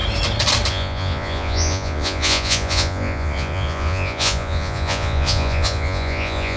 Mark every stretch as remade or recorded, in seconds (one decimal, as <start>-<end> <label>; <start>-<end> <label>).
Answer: 0.0-0.7 recorded; 0.7-6.6 remade